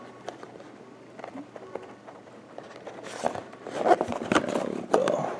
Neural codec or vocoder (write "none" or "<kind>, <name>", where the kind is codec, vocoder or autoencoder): vocoder, BigVGAN v2